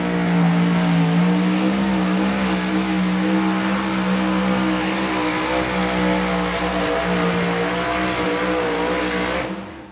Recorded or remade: recorded